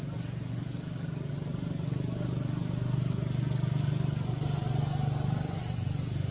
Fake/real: real